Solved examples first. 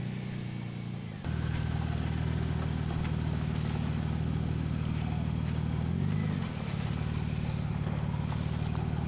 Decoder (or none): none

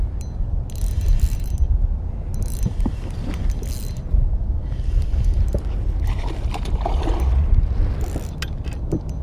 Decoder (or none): none